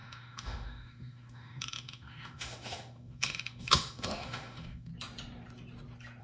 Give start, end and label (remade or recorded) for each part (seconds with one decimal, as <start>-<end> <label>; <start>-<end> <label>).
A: 0.0-4.9 remade; 4.9-6.2 recorded